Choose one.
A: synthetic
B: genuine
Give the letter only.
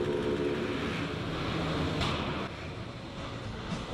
B